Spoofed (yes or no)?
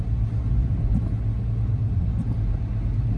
no